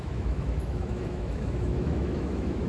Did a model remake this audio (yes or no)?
yes